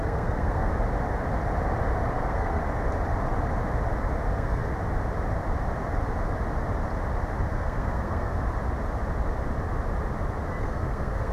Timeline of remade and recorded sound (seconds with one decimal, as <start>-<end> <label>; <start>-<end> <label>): 0.0-0.7 remade; 0.7-2.1 recorded; 2.1-2.6 remade; 2.6-4.3 recorded; 4.3-4.7 remade; 4.7-7.5 recorded; 7.5-8.3 remade; 8.3-10.6 recorded; 10.6-11.3 remade